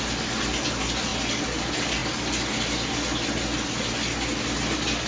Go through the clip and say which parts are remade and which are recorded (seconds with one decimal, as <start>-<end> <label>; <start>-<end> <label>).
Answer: 0.0-5.1 recorded